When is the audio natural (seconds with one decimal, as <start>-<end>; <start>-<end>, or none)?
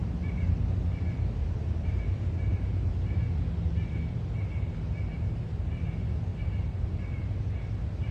0.0-1.4; 3.1-8.1